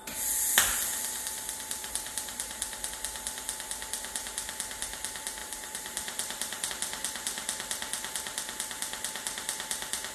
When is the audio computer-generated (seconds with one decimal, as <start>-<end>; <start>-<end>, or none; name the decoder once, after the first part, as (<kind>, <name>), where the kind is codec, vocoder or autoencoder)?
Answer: 1.8-2.9 (vocoder, BigVGAN v2); 5.4-6.7

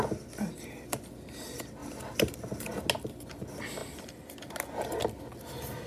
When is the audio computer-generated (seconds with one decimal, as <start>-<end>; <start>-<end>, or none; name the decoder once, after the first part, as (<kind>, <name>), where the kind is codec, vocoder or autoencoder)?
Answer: 1.8-2.9 (vocoder, BigVGAN v2)

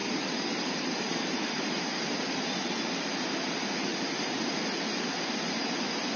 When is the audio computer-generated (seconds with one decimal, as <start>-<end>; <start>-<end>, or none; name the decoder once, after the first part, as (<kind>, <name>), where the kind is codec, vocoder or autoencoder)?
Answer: 0.0-2.7 (vocoder, BigVGAN v2)